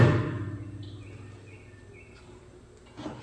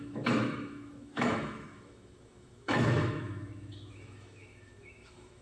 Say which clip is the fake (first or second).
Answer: second